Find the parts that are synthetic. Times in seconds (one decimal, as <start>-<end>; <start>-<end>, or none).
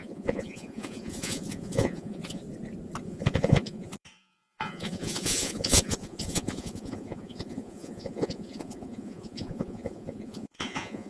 0.0-2.4; 3.0-11.1